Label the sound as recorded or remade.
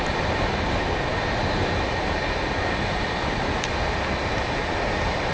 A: recorded